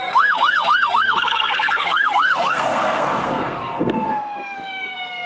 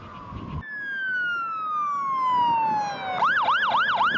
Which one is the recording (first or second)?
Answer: second